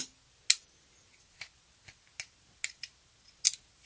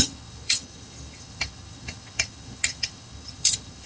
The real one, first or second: first